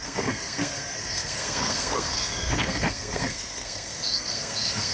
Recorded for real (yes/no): no